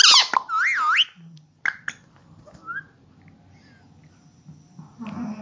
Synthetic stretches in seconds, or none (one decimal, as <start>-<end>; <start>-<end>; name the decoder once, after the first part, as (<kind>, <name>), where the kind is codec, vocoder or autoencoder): none